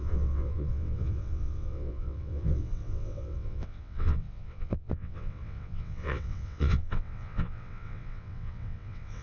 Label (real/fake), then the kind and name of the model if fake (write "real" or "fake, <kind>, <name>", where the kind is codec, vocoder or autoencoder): fake, vocoder, WaveNeXt